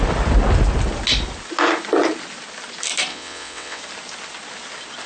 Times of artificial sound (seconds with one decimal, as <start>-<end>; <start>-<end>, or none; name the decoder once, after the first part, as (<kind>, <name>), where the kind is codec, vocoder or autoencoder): 3.1-3.8 (vocoder, WaveNeXt)